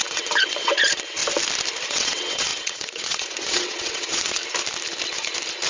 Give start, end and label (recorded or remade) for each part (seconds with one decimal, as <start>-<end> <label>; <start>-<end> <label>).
0.0-1.2 remade; 1.2-1.9 recorded; 1.9-4.4 remade; 4.4-5.7 recorded